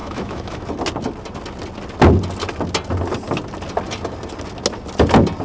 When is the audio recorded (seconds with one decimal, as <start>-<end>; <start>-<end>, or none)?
0.7-5.4

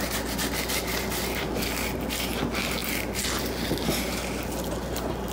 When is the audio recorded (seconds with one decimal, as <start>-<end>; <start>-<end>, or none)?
0.0-5.3